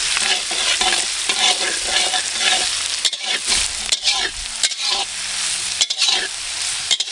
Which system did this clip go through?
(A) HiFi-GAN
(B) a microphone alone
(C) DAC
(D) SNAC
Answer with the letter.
B